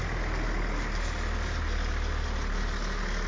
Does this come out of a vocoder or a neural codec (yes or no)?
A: no